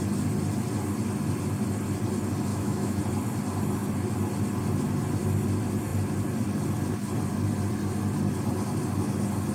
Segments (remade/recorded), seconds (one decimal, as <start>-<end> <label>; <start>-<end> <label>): 0.0-2.5 recorded; 2.5-3.0 remade; 3.0-9.5 recorded